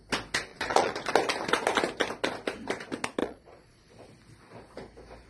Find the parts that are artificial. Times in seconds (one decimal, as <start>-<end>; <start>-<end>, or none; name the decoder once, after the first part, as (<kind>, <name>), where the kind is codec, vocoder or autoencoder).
0.5-1.1 (vocoder, Vocos); 3.2-3.9